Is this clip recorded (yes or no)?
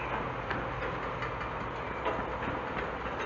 yes